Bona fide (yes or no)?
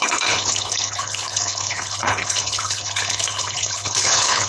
no